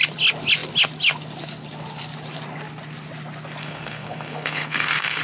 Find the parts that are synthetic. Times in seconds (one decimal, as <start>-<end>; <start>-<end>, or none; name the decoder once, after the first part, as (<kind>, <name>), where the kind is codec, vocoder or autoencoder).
3.6-5.2 (codec, SNAC)